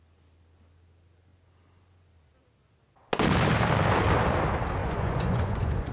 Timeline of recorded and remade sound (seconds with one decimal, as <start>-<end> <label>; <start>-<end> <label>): 0.0-4.8 recorded; 4.8-5.9 remade